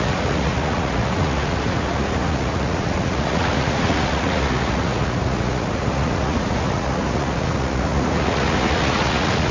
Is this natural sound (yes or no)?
no